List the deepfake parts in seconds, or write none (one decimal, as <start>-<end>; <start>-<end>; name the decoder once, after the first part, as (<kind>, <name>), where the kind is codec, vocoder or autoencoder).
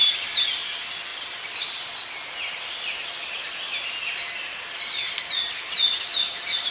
1.1-2.1 (vocoder, Vocos)